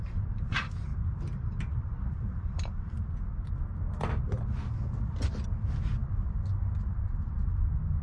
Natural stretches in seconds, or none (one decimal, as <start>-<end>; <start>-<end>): 1.0-1.7; 3.2-8.0